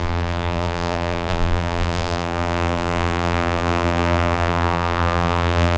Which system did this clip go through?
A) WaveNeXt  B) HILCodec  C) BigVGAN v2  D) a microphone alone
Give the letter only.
C